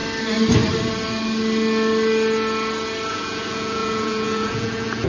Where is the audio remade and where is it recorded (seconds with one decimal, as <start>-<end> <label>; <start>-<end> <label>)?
0.0-3.1 recorded; 3.1-5.1 remade